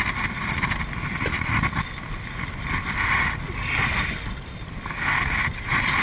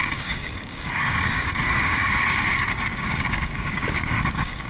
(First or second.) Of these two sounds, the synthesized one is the second